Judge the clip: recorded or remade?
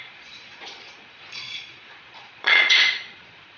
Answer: remade